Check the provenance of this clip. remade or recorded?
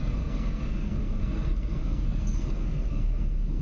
remade